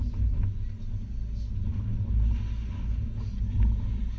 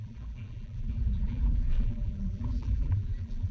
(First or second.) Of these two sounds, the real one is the first